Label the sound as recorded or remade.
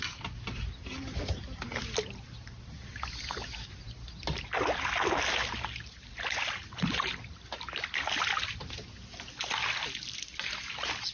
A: recorded